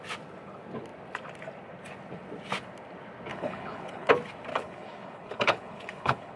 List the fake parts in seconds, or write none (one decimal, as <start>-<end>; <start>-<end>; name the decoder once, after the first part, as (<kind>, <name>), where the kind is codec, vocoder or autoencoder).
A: 3.3-4.1 (codec, HILCodec); 4.5-6.4